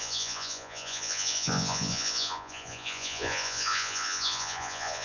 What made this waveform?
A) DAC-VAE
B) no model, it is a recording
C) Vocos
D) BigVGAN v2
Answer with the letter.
C